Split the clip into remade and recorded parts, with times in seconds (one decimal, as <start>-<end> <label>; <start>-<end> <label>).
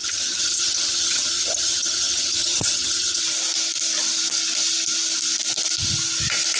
0.0-3.2 remade; 3.2-6.6 recorded